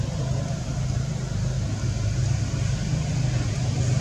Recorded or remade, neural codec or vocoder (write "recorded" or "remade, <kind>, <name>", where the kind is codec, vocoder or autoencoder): recorded